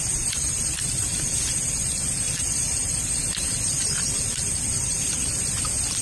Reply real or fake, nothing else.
fake